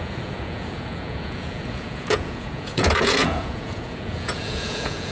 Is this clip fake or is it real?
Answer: fake